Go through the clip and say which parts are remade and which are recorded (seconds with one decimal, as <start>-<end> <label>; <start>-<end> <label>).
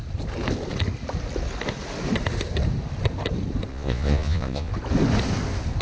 0.0-3.7 recorded; 3.7-4.7 remade; 4.7-5.8 recorded